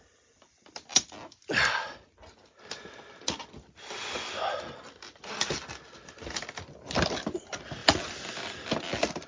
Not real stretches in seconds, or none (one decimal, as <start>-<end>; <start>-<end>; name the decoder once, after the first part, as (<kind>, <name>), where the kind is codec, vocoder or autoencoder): none